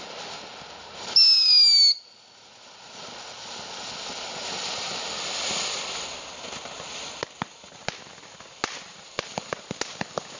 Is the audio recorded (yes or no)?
yes